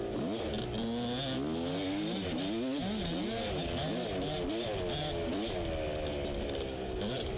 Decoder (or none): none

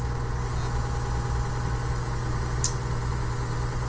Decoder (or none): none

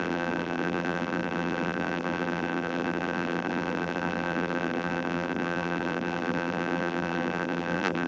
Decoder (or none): vocoder, BigVGAN v2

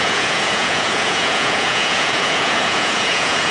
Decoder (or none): vocoder, Vocos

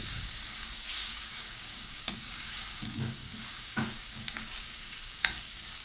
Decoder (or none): codec, DAC